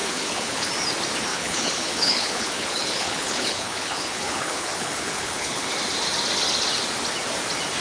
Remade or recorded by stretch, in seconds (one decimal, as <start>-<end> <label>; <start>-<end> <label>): 0.0-0.7 remade; 0.7-1.3 recorded; 1.3-5.7 remade; 5.7-7.8 recorded